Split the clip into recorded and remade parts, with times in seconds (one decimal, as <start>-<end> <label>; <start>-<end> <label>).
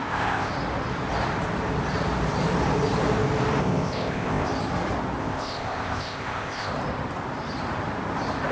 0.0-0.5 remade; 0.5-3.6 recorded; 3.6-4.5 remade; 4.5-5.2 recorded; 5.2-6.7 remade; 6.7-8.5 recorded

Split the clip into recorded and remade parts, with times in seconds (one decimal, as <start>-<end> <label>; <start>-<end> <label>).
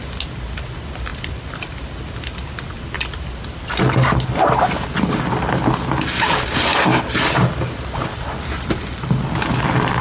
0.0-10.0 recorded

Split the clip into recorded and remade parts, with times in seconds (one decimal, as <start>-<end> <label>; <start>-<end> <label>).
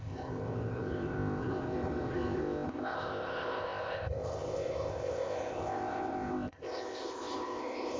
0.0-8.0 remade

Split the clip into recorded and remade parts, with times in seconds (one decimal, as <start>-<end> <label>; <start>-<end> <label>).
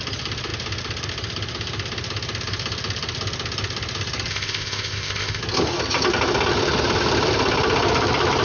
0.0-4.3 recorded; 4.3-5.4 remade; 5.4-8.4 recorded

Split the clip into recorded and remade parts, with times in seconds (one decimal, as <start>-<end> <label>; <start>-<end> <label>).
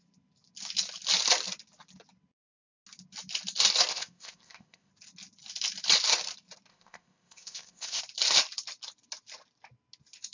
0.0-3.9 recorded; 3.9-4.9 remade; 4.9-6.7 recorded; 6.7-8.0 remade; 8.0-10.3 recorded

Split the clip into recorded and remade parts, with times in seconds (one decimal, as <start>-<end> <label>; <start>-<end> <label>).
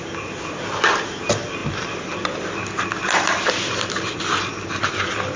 0.0-5.4 recorded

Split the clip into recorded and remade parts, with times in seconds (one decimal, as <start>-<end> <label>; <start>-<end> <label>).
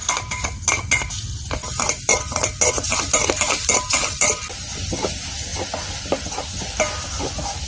0.0-7.7 recorded